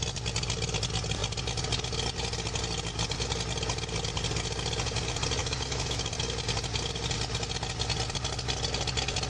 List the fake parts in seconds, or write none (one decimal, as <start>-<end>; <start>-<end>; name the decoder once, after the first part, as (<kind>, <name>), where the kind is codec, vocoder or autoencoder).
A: 5.4-6.1 (autoencoder, DAC-VAE)